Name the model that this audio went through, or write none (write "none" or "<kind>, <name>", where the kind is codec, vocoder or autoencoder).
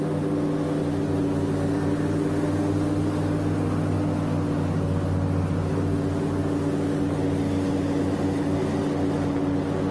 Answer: none